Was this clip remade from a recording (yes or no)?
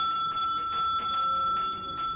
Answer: no